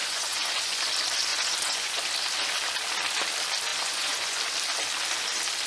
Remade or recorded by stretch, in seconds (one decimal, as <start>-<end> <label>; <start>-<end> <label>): 0.0-0.8 remade; 0.8-1.3 recorded; 1.3-2.0 remade; 2.0-3.7 recorded; 3.7-4.4 remade; 4.4-5.7 recorded